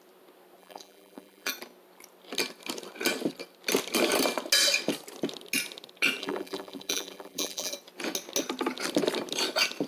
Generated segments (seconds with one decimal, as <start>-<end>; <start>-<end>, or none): 0.6-1.5; 6.2-7.7